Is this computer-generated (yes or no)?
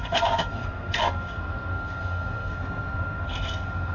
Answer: yes